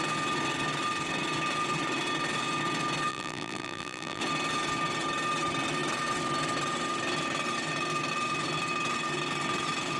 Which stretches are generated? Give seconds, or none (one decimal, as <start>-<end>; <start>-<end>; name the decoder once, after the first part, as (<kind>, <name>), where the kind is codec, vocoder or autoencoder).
3.1-4.2 (vocoder, BigVGAN v2)